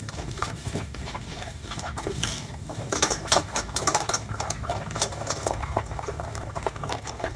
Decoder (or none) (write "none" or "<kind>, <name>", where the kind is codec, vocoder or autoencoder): codec, DAC